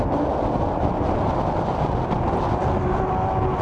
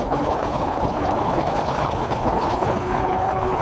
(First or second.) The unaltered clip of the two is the first